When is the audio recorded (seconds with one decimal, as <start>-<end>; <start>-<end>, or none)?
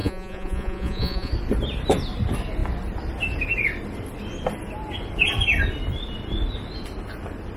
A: 1.3-7.6